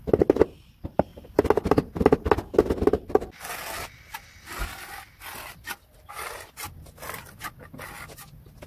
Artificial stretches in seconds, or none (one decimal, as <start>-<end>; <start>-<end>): none